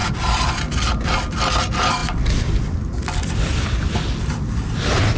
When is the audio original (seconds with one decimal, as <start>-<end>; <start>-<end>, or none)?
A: 0.0-5.2